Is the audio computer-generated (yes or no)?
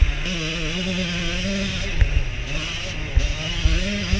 no